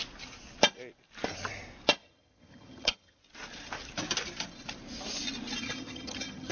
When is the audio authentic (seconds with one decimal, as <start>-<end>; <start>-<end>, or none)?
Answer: 0.0-2.0; 3.2-5.6